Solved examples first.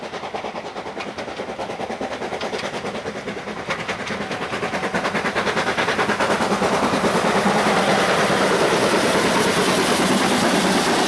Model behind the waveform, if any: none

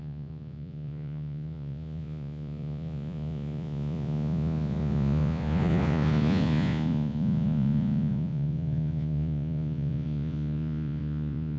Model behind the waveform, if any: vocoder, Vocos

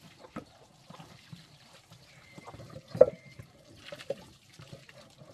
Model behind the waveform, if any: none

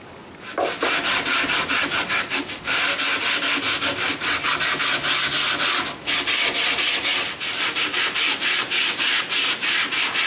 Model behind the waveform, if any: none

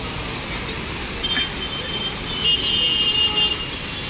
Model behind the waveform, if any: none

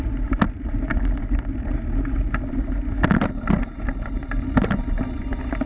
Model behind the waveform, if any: none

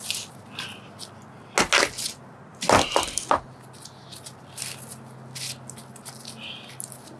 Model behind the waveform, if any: none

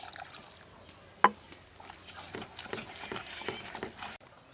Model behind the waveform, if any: none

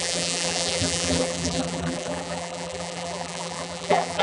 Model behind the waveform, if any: vocoder, BigVGAN v2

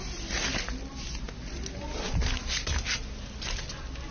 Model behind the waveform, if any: none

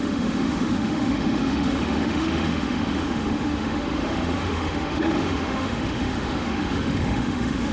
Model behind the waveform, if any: autoencoder, DAC-VAE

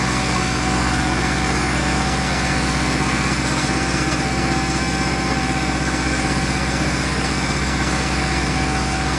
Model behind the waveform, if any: codec, SNAC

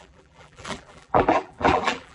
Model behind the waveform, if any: vocoder, BigVGAN v2